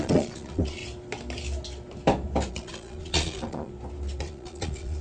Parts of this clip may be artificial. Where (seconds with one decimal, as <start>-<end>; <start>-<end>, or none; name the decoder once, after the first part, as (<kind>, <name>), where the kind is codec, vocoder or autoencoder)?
0.0-0.8 (vocoder, Vocos); 2.5-3.7; 4.2-5.0